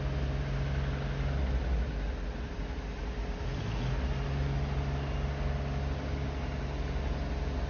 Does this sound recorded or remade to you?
recorded